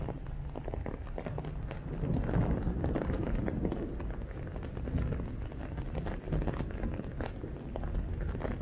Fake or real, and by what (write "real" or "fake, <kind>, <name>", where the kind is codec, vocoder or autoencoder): real